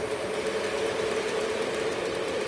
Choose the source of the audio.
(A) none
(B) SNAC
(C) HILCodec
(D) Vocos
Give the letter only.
A